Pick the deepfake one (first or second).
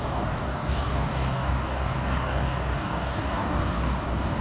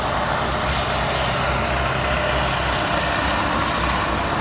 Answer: first